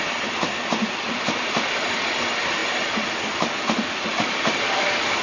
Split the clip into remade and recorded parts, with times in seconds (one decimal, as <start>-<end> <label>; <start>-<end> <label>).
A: 0.0-5.2 recorded